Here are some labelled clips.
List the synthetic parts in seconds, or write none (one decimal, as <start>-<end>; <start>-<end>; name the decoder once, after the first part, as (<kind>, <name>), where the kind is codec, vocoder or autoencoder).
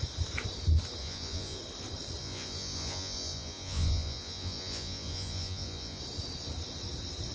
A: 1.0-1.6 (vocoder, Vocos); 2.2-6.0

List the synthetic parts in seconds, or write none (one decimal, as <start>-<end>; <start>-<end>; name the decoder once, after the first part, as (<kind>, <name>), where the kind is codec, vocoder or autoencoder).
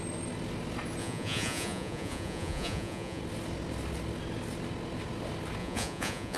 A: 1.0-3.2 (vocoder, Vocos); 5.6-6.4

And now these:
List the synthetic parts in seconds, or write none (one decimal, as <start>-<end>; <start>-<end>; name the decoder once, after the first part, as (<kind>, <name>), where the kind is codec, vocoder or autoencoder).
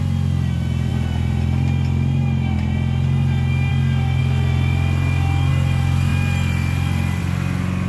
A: none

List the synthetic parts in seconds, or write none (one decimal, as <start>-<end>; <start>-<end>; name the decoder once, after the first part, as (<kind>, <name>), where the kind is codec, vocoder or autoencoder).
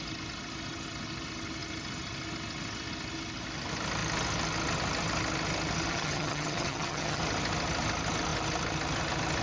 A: 5.9-7.2 (vocoder, HiFi-GAN)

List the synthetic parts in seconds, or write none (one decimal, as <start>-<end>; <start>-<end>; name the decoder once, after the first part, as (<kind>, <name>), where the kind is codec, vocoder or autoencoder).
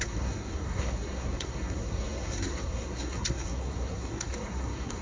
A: 0.0-5.0 (codec, SNAC)